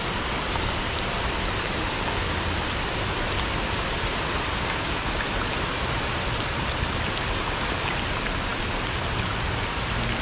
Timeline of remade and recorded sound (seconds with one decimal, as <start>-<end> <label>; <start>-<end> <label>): 0.0-10.2 recorded